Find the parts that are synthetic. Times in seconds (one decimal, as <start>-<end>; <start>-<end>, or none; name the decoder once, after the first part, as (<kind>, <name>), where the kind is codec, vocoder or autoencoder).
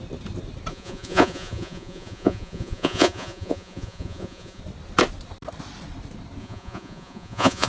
0.7-4.6 (vocoder, Vocos); 6.4-7.7